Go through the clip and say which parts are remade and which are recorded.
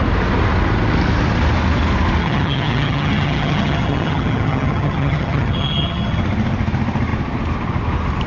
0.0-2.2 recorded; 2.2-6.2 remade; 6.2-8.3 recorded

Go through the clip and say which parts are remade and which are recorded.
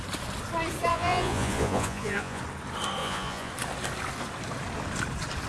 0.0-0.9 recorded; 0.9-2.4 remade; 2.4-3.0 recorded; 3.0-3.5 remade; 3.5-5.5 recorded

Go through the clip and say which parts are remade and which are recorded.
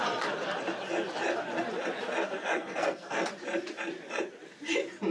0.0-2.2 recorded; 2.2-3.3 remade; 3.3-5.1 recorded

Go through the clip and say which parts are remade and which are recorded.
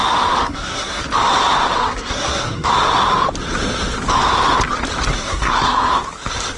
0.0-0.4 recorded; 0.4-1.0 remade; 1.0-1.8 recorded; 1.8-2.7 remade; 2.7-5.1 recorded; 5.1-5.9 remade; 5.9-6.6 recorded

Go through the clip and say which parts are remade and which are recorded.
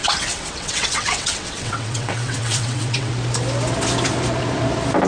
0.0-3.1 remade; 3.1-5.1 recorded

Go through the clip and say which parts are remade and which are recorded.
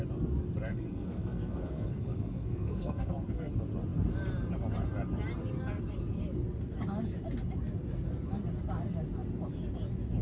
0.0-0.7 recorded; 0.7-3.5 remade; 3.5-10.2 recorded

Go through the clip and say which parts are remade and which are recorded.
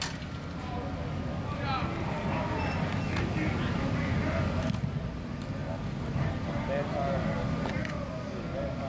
0.0-8.9 recorded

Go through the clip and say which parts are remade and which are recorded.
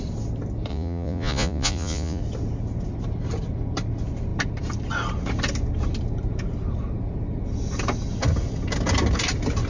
0.0-0.7 recorded; 0.7-2.2 remade; 2.2-9.7 recorded